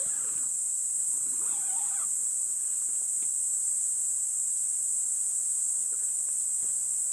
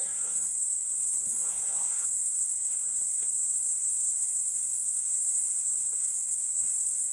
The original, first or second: first